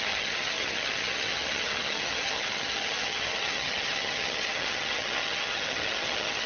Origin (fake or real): fake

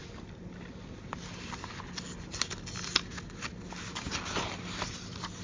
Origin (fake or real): real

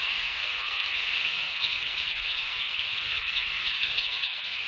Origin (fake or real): fake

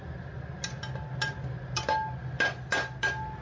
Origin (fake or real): real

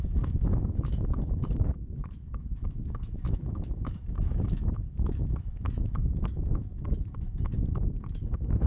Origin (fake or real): fake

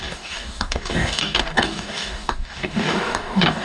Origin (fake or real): fake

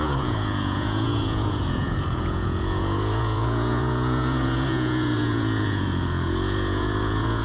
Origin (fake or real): fake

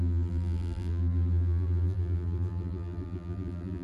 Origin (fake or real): fake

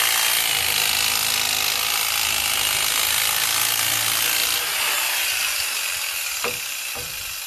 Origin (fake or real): real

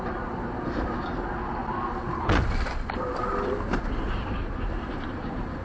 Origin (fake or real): real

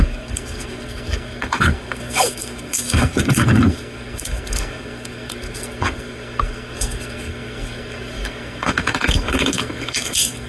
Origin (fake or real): fake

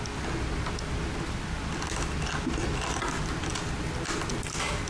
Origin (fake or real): real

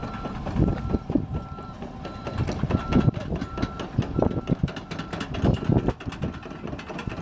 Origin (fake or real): real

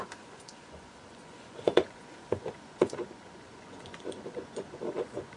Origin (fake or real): fake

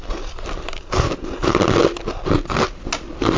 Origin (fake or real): real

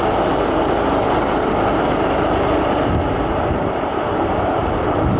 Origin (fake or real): fake